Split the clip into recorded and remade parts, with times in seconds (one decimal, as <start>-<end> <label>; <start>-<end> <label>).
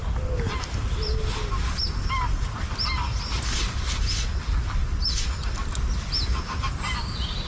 0.0-7.5 recorded